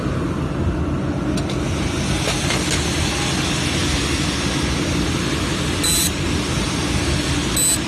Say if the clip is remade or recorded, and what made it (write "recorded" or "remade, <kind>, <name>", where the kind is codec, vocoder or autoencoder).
recorded